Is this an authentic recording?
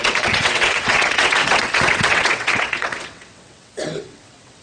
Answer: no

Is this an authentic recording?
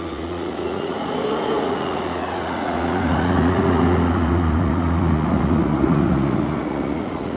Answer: no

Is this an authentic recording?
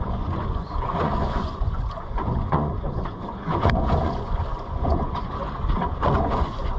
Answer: no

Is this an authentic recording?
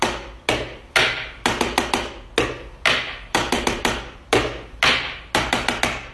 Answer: yes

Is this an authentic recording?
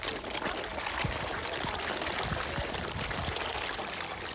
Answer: yes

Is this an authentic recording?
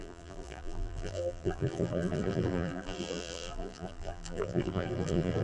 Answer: no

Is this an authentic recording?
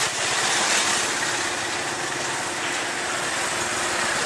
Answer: yes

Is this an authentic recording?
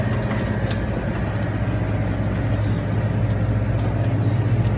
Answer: yes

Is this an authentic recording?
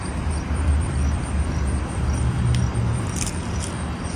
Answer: no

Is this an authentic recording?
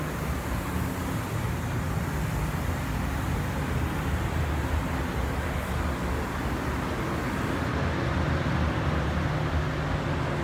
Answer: yes